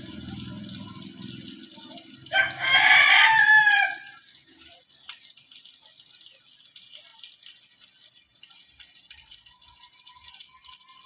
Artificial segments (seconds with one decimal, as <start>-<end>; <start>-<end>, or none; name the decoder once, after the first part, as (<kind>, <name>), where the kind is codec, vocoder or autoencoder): none